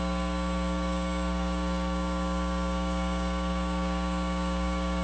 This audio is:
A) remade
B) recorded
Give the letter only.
A